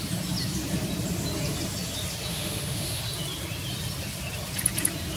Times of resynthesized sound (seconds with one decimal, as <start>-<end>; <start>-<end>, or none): 2.3-3.0